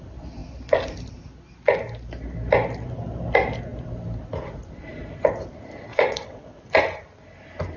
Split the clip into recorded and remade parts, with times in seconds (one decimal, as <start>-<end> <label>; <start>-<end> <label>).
0.0-5.9 recorded; 5.9-6.8 remade; 6.8-7.8 recorded